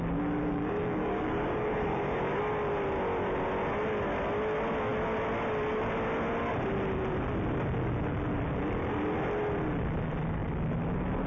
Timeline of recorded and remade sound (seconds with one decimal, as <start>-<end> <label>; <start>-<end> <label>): 0.0-0.4 recorded; 0.4-2.4 remade; 2.4-11.3 recorded